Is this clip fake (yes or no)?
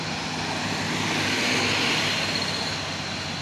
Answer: no